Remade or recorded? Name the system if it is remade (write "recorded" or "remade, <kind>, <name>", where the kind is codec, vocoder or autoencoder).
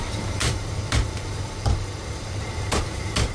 remade, vocoder, BigVGAN v2